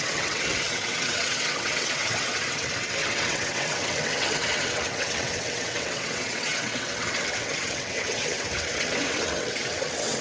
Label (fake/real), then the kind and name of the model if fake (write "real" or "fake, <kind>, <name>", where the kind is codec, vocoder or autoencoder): fake, vocoder, WaveNeXt